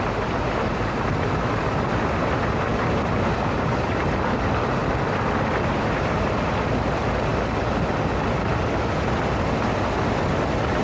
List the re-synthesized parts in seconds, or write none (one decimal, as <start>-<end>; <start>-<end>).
0.0-4.8; 5.7-7.3